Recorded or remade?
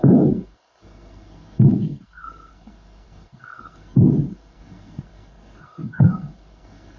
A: remade